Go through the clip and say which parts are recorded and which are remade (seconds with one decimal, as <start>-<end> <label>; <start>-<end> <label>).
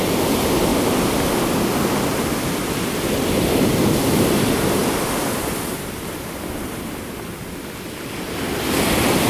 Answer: 0.0-9.3 recorded